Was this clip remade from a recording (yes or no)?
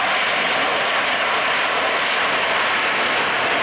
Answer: no